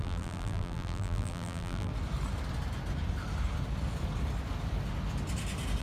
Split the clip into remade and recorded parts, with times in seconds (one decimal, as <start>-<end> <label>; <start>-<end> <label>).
0.0-1.9 remade; 1.9-5.8 recorded